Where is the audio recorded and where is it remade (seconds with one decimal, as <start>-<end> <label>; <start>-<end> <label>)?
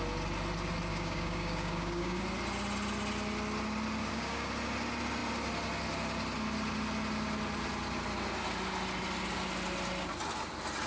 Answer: 0.0-0.9 recorded; 0.9-2.2 remade; 2.2-4.0 recorded; 4.0-4.5 remade; 4.5-10.9 recorded